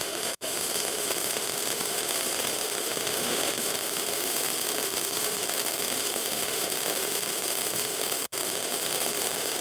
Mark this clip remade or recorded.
remade